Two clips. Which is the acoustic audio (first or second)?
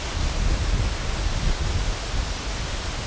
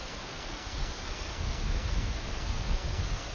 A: first